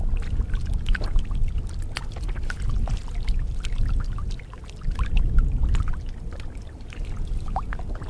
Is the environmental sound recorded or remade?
recorded